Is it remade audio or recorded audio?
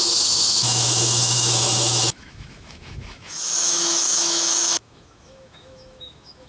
remade